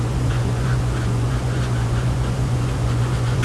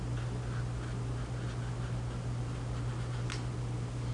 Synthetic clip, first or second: first